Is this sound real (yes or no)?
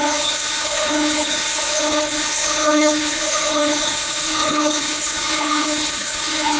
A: no